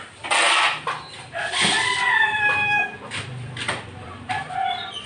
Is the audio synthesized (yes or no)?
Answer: yes